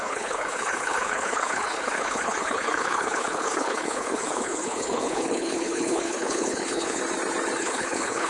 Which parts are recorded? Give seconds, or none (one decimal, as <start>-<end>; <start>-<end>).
7.0-7.6